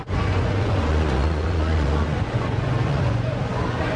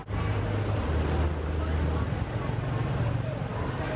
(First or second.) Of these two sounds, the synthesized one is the first